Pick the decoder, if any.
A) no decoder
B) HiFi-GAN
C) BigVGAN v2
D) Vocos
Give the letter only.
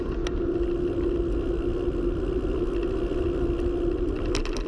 A